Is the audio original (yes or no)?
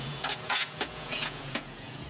no